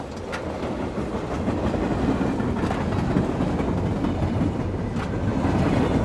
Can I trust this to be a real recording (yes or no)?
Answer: yes